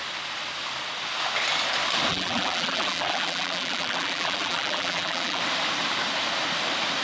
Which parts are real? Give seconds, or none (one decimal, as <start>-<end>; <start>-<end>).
0.0-2.1; 5.4-7.0